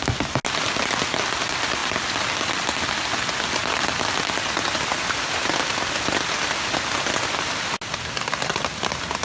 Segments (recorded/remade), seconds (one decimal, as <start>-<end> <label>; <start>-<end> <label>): 0.0-9.2 recorded